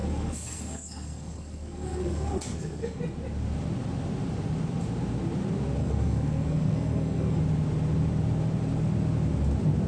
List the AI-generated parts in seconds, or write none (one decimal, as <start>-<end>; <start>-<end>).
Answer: 0.0-3.0; 5.8-7.4